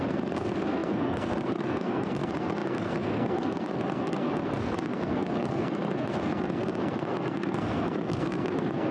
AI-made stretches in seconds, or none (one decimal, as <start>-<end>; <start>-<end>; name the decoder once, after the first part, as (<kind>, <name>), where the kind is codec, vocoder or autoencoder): 0.0-8.9 (codec, SNAC)